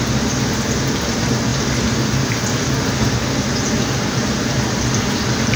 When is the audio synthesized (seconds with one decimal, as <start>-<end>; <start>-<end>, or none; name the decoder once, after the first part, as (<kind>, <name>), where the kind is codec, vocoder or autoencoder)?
none